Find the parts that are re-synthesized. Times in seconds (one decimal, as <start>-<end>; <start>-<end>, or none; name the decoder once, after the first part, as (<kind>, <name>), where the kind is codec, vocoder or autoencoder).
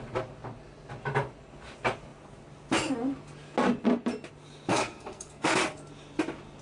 4.7-5.5 (codec, SNAC)